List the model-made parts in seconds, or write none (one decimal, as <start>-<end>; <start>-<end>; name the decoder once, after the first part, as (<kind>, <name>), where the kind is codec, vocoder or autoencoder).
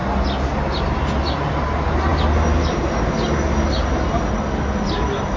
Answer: none